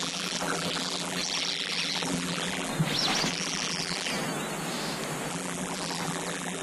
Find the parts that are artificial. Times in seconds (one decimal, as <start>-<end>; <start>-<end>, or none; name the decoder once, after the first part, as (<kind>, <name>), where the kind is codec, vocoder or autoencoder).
0.0-2.7 (vocoder, BigVGAN v2); 3.3-4.1; 5.3-6.6